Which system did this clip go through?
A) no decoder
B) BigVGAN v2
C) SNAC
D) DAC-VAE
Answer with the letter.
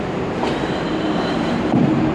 B